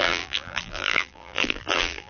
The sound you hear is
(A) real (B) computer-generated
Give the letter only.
B